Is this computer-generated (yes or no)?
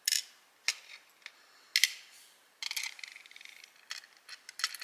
no